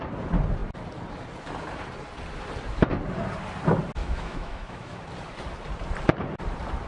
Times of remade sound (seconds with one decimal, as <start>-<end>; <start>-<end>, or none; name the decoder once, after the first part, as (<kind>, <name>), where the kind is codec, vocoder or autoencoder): 4.0-5.0 (autoencoder, DAC-VAE)